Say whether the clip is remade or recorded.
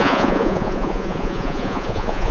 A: remade